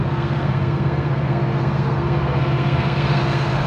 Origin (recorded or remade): remade